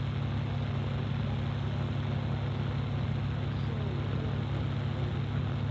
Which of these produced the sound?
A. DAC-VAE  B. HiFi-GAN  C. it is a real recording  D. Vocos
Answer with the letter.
C